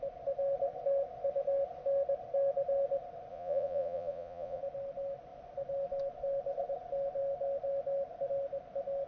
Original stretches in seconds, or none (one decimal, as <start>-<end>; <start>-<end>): 0.0-3.3; 4.6-9.1